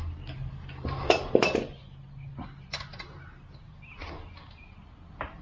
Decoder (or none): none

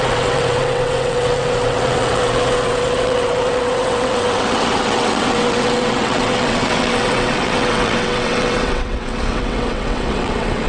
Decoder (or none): vocoder, WaveNeXt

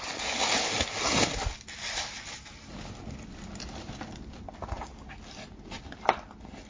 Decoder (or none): none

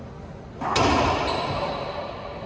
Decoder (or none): none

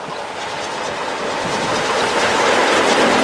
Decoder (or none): none